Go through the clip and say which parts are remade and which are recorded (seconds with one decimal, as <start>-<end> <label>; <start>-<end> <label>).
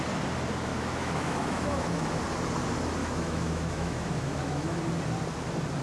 0.0-0.7 recorded; 0.7-2.2 remade; 2.2-3.0 recorded; 3.0-4.8 remade; 4.8-5.8 recorded